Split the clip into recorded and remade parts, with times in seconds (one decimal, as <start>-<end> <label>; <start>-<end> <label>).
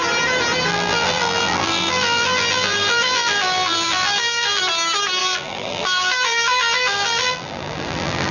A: 0.0-0.7 recorded; 0.7-4.6 remade; 4.6-5.2 recorded; 5.2-8.3 remade